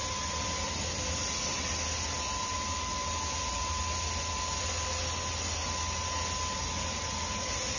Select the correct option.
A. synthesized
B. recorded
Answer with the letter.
B